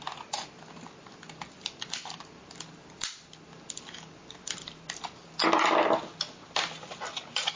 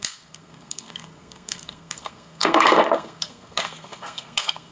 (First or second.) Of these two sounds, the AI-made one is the second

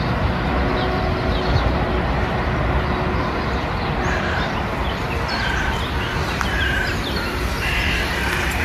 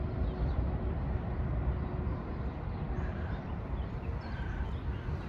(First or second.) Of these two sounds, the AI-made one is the second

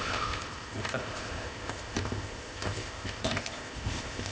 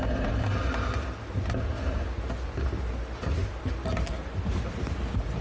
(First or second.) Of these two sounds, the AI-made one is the first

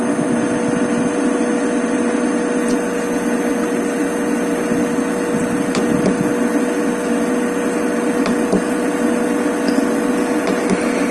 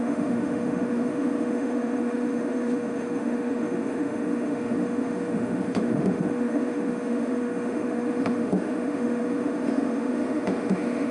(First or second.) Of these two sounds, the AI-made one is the second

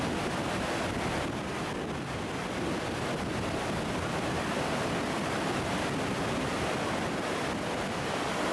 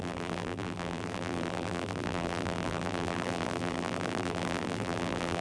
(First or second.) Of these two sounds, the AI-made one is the second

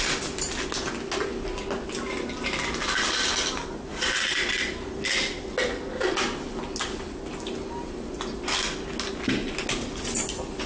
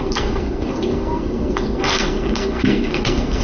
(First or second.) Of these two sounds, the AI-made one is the second